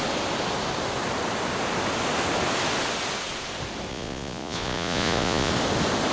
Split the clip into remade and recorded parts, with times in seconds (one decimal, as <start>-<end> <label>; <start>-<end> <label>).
0.0-3.9 recorded; 3.9-5.5 remade; 5.5-6.1 recorded